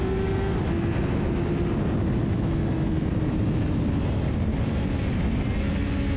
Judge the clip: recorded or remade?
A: recorded